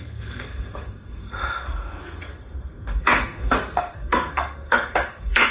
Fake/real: fake